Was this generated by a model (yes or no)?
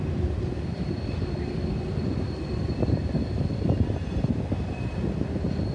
no